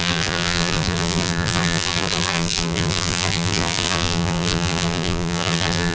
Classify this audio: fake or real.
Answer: fake